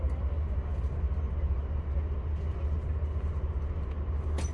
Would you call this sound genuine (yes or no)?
yes